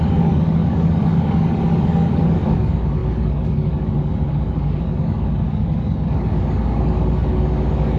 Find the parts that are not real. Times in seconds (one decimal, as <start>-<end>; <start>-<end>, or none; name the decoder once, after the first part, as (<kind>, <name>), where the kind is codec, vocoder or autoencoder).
0.0-8.0 (codec, DAC)